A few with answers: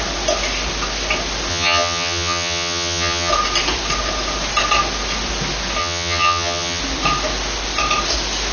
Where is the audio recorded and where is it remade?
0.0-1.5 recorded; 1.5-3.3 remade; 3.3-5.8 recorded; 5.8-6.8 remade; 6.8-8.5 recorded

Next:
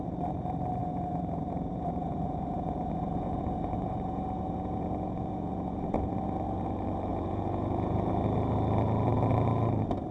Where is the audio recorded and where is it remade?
0.0-0.8 recorded; 0.8-6.1 remade; 6.1-7.1 recorded; 7.1-8.1 remade; 8.1-10.1 recorded

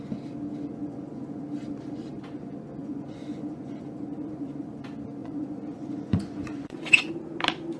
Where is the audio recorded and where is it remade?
0.0-0.8 recorded; 0.8-1.4 remade; 1.4-2.8 recorded; 2.8-4.8 remade; 4.8-5.2 recorded; 5.2-7.1 remade; 7.1-7.8 recorded

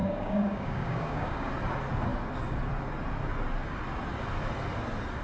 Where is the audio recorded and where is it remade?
0.0-1.5 remade; 1.5-5.2 recorded

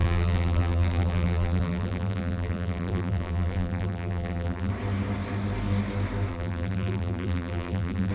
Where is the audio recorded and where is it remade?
0.0-4.7 remade; 4.7-6.3 recorded; 6.3-8.1 remade

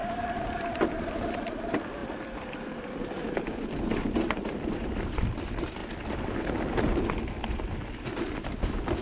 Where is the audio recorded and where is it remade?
0.0-5.8 remade; 5.8-7.8 recorded; 7.8-9.0 remade